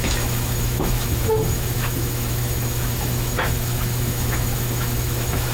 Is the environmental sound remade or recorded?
remade